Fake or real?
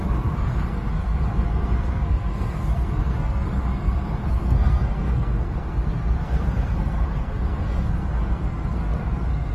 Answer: fake